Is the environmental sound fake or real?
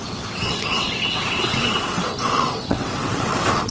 fake